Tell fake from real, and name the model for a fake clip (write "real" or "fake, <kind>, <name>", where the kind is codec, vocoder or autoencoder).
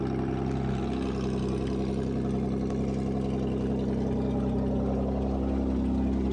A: real